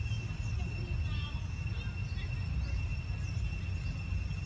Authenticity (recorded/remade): recorded